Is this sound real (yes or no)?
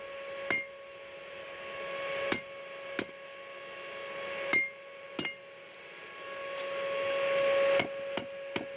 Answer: yes